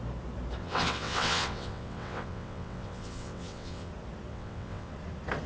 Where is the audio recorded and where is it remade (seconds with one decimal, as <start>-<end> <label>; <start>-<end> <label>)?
0.0-0.6 recorded; 0.6-3.9 remade; 3.9-4.3 recorded; 4.3-4.9 remade; 4.9-5.5 recorded